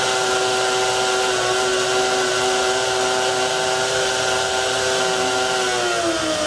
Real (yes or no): yes